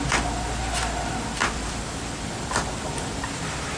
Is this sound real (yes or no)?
yes